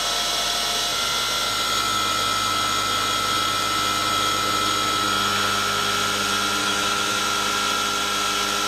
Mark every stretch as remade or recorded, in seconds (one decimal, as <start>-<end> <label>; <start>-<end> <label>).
0.0-6.6 recorded; 6.6-7.2 remade; 7.2-8.7 recorded